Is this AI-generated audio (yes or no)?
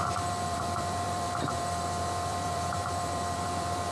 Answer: yes